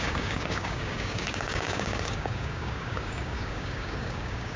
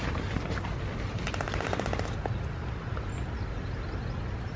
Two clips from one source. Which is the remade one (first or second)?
first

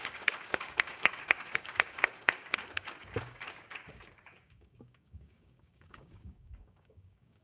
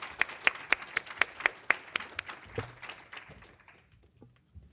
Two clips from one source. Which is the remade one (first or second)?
first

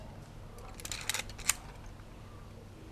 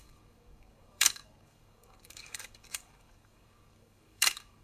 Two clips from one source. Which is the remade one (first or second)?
second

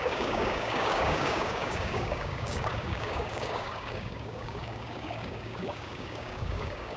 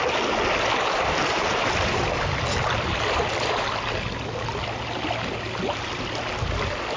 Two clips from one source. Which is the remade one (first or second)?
first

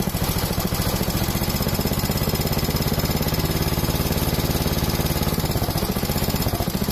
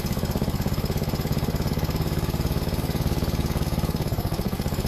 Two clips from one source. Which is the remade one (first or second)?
second